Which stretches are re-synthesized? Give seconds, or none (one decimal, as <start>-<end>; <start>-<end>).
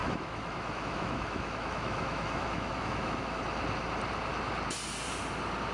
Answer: 0.0-3.4